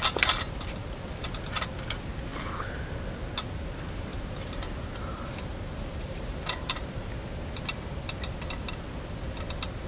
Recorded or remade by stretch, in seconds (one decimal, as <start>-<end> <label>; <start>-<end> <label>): 0.0-2.3 recorded; 2.3-2.8 remade; 2.8-4.1 recorded; 4.1-7.1 remade; 7.1-9.9 recorded